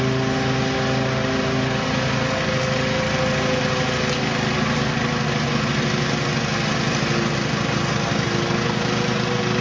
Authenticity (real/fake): real